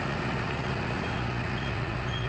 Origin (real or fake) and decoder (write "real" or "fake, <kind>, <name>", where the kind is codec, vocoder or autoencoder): fake, vocoder, Vocos